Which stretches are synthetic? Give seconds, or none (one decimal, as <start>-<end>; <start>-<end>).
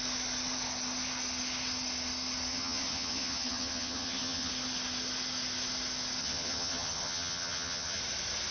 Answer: 2.5-4.5; 6.2-8.0